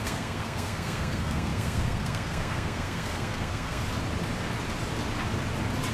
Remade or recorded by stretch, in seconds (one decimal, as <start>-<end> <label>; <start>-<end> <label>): 0.0-3.8 remade; 3.8-5.9 recorded